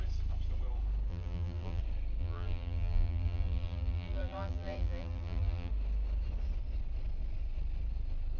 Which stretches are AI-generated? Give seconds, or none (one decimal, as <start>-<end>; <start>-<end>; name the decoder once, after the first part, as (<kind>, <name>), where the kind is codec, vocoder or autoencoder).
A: 1.1-1.8 (vocoder, BigVGAN v2); 2.2-5.7